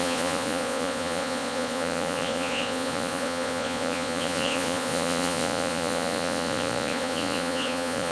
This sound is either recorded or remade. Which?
remade